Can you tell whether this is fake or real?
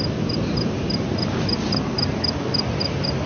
real